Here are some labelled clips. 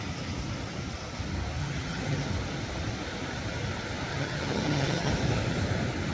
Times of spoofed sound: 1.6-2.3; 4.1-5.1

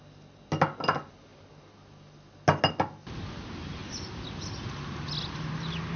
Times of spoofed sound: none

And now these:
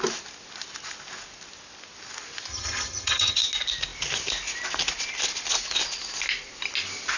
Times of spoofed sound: 2.5-3.4

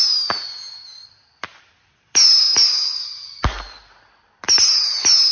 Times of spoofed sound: none

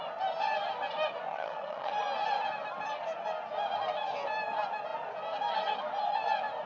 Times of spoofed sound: 1.3-1.9